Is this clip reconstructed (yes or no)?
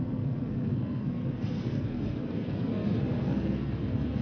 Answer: yes